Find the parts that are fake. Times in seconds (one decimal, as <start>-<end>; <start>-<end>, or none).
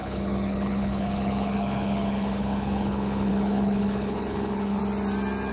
0.0-4.8